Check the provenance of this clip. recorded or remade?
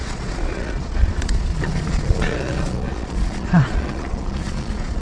remade